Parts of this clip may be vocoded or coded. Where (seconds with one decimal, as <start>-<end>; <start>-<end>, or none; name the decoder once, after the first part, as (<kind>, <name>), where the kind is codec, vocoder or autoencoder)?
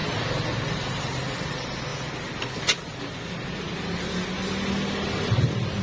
none